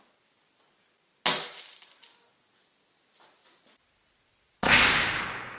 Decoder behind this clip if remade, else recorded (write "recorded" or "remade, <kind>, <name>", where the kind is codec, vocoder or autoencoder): recorded